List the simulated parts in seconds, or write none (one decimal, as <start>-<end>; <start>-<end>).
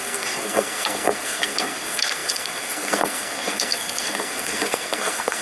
0.0-5.4